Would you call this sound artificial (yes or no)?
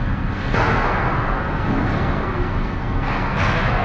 yes